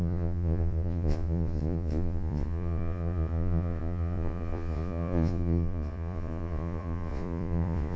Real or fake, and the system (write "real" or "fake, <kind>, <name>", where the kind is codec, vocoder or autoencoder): fake, vocoder, Vocos